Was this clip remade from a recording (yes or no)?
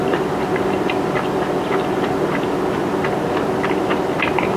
no